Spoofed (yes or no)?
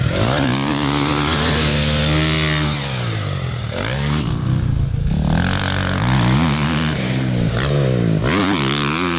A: no